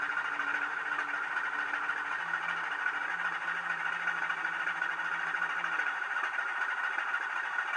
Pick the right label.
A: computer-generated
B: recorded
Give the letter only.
B